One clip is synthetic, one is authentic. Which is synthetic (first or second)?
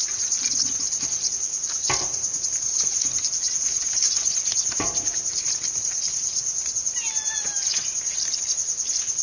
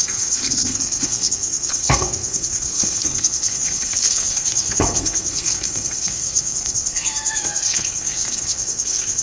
second